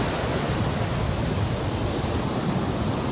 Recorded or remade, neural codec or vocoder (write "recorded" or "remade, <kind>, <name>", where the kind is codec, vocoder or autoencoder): recorded